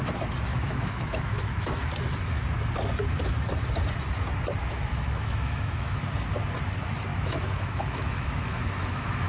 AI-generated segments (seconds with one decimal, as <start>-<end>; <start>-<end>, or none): 0.5-1.9; 4.6-6.0; 7.1-9.3